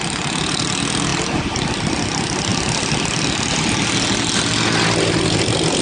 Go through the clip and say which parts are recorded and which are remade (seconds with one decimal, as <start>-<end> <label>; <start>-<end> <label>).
0.0-5.8 recorded